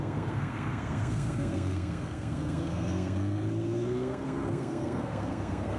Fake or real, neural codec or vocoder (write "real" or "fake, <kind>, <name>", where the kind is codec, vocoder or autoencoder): fake, codec, SNAC